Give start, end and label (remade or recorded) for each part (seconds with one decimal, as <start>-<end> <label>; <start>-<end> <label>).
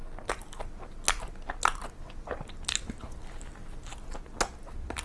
0.0-5.0 recorded